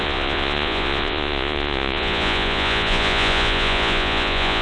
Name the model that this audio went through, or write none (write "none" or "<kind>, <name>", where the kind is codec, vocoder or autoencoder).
vocoder, Vocos